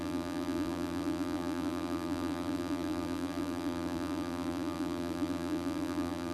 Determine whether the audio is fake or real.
fake